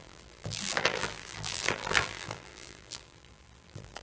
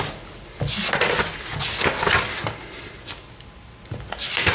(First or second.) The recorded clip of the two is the second